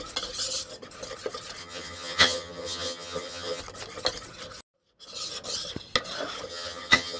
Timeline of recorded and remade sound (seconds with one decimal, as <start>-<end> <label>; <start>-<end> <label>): 0.0-1.6 recorded; 1.6-3.6 remade; 3.6-6.5 recorded; 6.5-7.2 remade